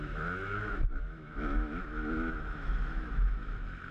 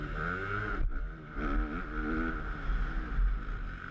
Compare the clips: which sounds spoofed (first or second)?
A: first